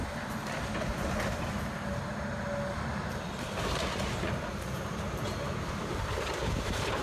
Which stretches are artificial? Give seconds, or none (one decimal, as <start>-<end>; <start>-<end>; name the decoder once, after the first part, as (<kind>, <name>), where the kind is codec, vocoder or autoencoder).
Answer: 3.6-7.0 (vocoder, BigVGAN v2)